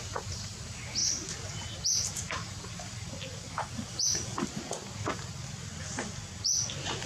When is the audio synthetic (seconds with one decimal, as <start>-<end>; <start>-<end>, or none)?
none